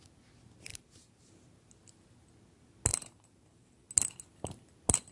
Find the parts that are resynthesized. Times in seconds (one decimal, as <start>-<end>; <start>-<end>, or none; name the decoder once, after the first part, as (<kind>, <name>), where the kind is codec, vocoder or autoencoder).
0.7-1.3 (vocoder, BigVGAN v2); 2.9-3.9